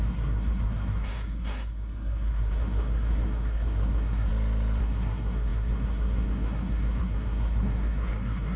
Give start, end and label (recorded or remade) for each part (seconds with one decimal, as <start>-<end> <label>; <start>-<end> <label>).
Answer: 0.0-4.3 remade; 4.3-4.8 recorded; 4.8-8.6 remade